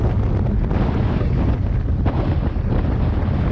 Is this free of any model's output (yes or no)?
yes